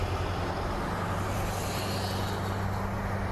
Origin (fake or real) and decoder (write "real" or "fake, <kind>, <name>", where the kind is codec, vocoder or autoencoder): real